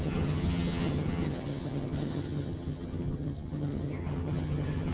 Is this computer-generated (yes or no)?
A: yes